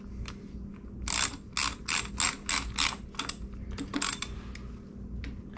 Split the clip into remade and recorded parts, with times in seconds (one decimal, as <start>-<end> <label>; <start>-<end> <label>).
0.0-5.6 recorded